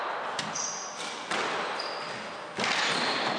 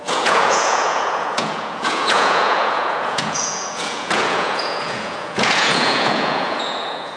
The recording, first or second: first